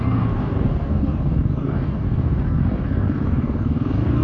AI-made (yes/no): yes